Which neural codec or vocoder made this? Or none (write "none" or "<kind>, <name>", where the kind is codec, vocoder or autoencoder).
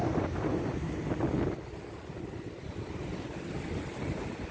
none